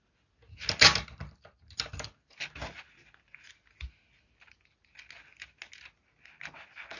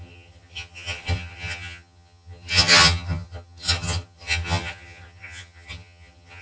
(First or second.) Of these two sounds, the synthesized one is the second